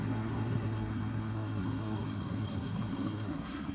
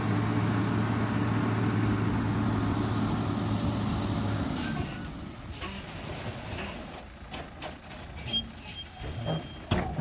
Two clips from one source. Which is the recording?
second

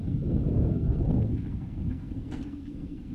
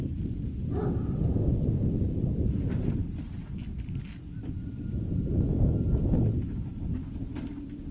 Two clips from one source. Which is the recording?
second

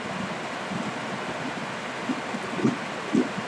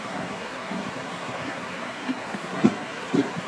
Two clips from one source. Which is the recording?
first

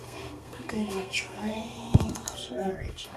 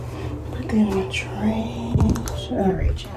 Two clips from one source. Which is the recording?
second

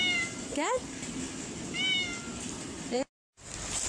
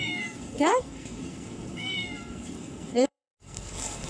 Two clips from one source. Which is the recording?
first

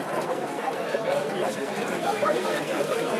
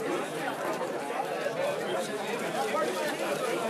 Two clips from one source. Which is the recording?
second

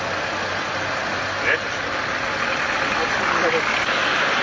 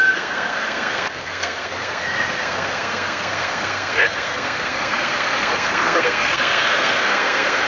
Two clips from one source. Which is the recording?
first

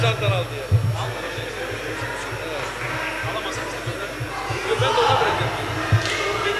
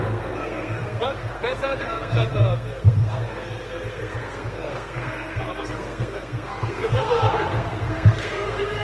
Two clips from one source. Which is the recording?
first